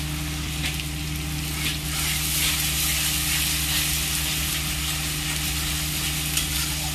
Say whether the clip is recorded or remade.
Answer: recorded